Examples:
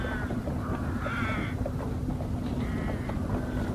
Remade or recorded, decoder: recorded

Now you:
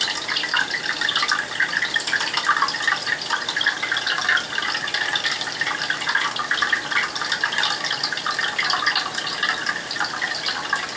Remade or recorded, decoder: recorded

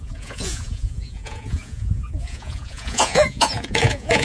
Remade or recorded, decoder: remade, vocoder, Vocos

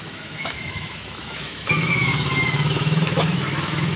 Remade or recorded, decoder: remade, autoencoder, DAC-VAE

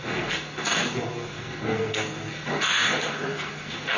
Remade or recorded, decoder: remade, codec, SNAC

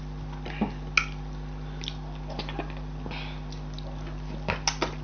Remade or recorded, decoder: recorded